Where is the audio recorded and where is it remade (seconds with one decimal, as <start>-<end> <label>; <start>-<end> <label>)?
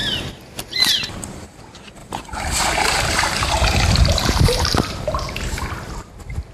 0.0-1.6 remade; 1.6-2.0 recorded; 2.0-5.9 remade; 5.9-6.5 recorded